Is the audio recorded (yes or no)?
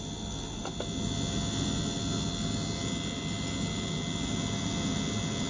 yes